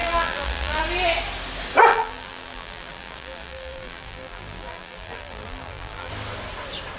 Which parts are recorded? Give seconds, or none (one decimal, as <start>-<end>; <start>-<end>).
0.8-1.9; 6.1-7.0